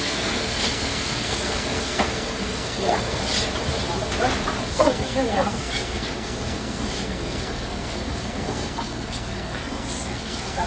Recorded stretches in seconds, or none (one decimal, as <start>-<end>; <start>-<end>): 3.2-4.7